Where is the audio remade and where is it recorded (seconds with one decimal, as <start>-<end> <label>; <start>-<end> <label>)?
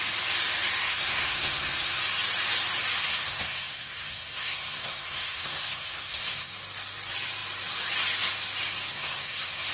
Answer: 0.0-0.8 recorded; 0.8-2.0 remade; 2.0-3.0 recorded; 3.0-6.5 remade; 6.5-8.9 recorded; 8.9-9.7 remade